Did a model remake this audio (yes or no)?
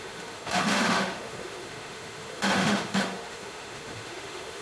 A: yes